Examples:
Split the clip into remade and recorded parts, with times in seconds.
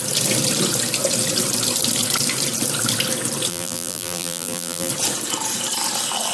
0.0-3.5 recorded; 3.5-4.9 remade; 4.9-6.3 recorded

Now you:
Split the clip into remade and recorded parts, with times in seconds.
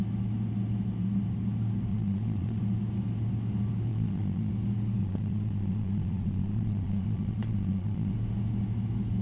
0.0-1.9 recorded; 1.9-2.6 remade; 2.6-3.9 recorded; 3.9-4.5 remade; 4.5-5.0 recorded; 5.0-8.1 remade; 8.1-9.2 recorded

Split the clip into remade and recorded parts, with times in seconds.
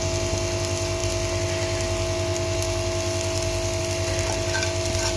0.0-5.2 recorded